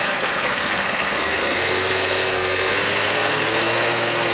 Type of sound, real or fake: fake